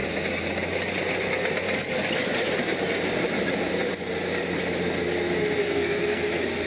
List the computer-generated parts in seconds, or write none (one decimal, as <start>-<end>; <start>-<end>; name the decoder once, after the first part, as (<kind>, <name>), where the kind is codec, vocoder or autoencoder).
5.6-6.3 (codec, SNAC)